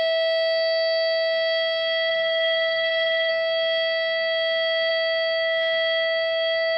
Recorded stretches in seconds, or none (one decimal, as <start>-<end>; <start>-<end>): 0.0-2.1; 3.3-6.8